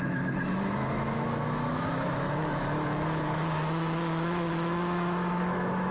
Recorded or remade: remade